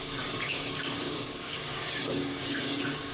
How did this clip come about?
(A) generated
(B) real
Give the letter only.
A